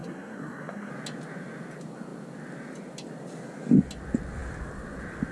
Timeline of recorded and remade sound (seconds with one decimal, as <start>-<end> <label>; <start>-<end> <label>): 0.0-0.9 remade; 0.9-5.3 recorded